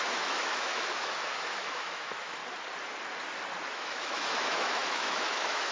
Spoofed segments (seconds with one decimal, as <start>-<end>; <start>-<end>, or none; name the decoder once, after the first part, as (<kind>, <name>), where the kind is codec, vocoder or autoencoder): 0.0-2.4 (autoencoder, DAC-VAE); 3.7-5.7